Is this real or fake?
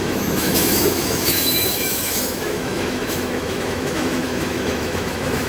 fake